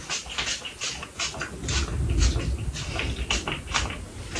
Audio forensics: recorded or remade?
recorded